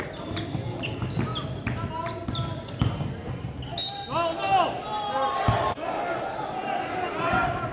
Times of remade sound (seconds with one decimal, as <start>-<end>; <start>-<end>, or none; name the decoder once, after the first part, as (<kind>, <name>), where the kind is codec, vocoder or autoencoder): none